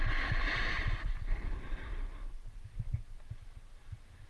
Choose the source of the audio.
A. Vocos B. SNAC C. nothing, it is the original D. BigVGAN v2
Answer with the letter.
D